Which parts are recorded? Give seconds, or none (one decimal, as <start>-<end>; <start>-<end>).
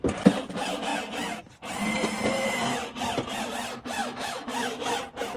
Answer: 0.0-4.0; 5.0-5.4